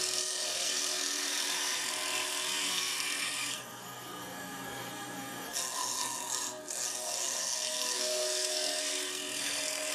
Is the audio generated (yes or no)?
yes